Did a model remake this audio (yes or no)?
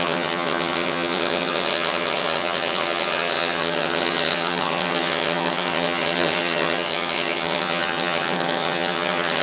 yes